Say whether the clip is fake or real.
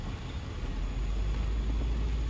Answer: real